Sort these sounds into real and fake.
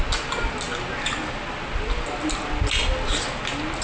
real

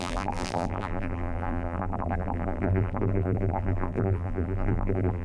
fake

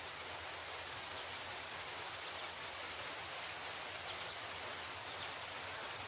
real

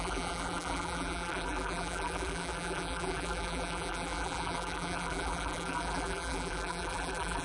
fake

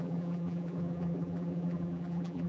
fake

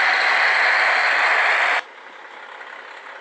real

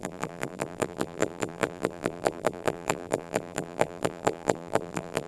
fake